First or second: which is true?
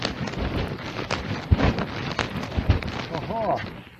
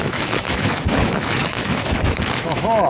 first